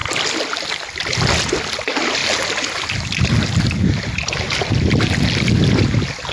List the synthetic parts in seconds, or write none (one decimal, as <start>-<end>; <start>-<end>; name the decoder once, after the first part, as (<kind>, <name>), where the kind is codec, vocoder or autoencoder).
none